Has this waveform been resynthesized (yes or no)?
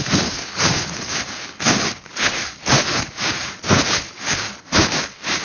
yes